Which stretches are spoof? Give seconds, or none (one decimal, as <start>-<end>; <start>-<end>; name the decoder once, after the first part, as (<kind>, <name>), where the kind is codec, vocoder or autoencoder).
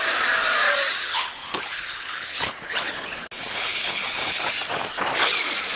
1.0-4.5 (codec, HILCodec)